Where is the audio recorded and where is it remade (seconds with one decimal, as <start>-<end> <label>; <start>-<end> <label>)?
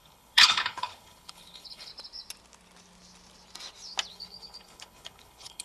0.0-1.9 remade; 1.9-4.1 recorded; 4.1-5.6 remade